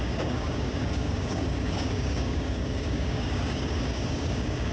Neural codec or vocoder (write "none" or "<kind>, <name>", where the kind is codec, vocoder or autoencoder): codec, DAC